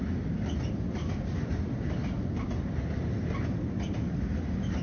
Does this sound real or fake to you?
real